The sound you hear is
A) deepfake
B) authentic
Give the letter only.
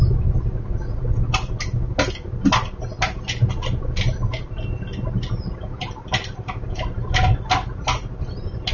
B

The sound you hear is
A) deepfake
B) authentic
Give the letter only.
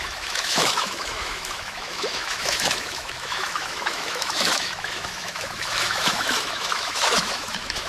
A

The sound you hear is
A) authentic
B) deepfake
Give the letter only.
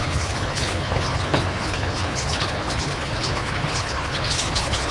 B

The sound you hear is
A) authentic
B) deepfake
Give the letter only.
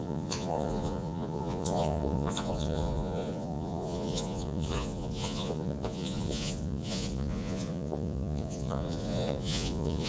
B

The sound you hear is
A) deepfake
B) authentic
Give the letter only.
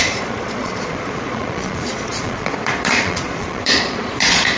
A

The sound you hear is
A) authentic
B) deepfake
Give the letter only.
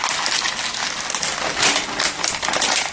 A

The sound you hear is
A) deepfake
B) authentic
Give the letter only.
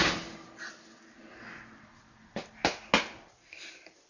B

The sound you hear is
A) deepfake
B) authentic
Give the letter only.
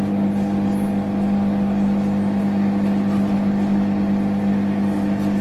B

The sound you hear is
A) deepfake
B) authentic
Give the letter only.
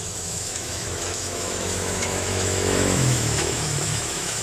A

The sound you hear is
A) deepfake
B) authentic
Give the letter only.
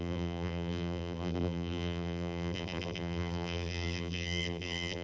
A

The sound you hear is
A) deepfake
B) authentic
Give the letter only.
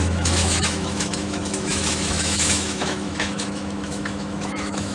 A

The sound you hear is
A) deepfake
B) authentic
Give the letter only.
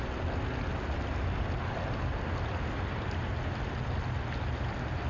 B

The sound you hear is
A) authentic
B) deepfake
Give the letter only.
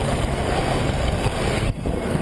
B